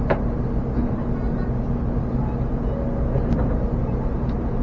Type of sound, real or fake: real